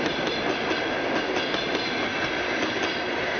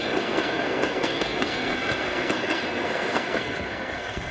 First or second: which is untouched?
first